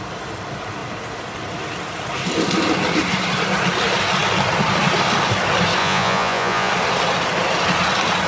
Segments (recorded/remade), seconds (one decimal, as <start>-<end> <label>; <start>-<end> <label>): 0.0-5.8 recorded; 5.8-6.7 remade; 6.7-8.3 recorded